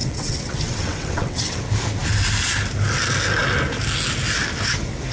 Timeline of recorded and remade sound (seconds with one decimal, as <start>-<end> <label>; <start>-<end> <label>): 0.0-1.6 remade; 1.6-5.1 recorded